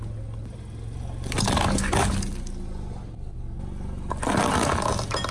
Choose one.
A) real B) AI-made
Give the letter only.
A